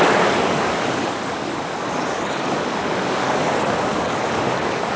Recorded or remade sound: remade